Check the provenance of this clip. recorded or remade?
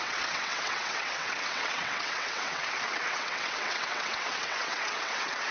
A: remade